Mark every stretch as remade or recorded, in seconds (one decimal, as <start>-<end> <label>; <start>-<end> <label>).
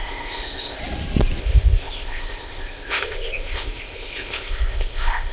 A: 0.0-0.8 remade; 0.8-1.4 recorded; 1.4-5.3 remade